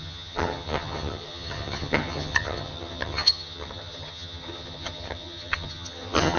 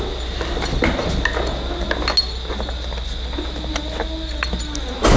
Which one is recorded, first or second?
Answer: second